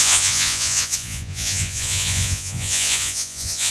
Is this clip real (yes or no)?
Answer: no